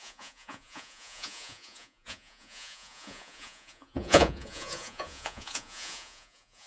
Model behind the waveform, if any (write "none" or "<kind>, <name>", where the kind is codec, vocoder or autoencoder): vocoder, Vocos